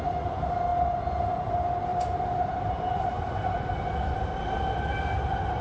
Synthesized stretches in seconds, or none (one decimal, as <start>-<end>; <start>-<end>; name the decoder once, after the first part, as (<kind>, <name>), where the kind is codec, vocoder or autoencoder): 1.9-4.5 (vocoder, BigVGAN v2)